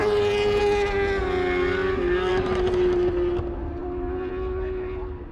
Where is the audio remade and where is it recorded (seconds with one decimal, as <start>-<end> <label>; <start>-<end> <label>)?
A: 0.0-5.3 recorded